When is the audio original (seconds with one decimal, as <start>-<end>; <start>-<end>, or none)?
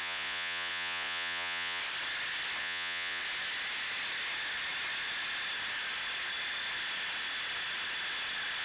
1.8-2.6; 3.2-8.6